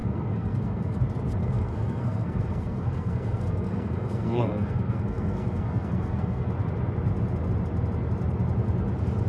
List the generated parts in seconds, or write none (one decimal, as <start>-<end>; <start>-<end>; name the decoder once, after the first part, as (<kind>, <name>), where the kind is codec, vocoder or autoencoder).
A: 0.0-1.0 (codec, SNAC); 1.4-6.5